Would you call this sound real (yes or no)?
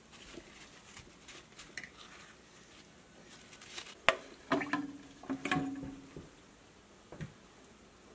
yes